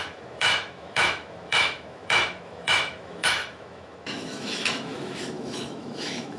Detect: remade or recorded remade